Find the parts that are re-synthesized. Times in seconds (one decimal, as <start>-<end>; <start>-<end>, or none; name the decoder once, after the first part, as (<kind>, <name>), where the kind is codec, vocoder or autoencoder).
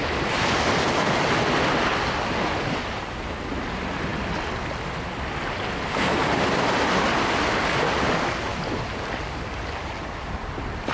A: none